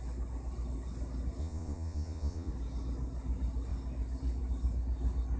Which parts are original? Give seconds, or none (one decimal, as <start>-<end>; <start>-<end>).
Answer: 0.0-1.4; 2.5-5.4